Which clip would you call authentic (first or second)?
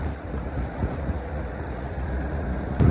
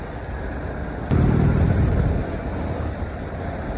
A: second